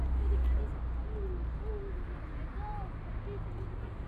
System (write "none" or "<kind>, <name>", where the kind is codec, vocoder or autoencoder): none